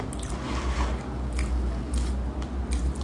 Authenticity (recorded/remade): recorded